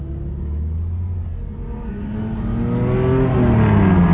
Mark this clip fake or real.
real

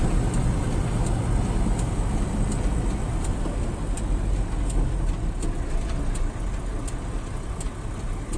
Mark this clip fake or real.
real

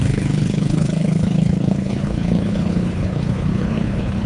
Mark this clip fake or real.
fake